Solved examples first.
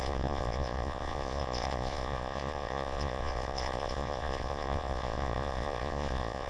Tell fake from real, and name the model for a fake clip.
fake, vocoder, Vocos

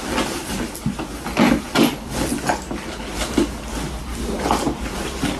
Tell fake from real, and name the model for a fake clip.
real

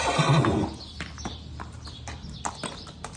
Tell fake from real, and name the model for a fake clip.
real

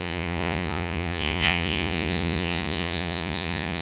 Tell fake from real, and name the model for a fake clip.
fake, vocoder, Vocos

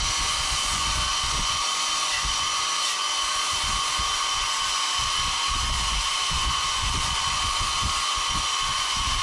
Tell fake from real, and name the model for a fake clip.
fake, vocoder, Vocos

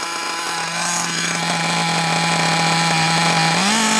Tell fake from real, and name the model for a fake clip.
real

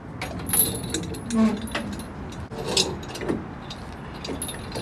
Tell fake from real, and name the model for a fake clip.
real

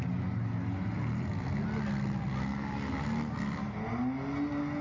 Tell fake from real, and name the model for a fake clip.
real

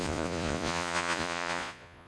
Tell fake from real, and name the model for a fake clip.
fake, vocoder, Vocos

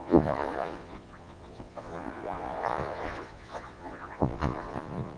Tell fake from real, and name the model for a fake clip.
fake, vocoder, Vocos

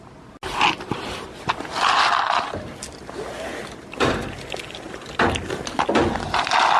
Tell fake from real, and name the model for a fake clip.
real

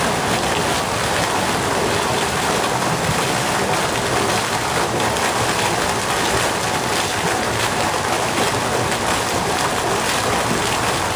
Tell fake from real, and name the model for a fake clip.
real